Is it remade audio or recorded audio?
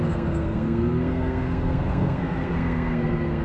remade